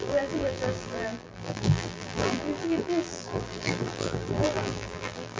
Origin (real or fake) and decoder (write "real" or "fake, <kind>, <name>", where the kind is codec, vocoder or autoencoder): fake, vocoder, BigVGAN v2